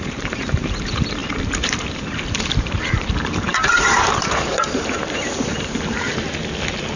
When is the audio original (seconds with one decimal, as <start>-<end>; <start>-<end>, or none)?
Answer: 6.1-7.0